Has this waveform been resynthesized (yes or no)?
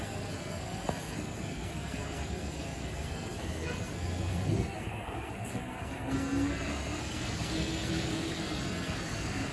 yes